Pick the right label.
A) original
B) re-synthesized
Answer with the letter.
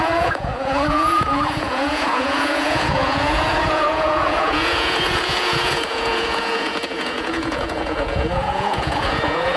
B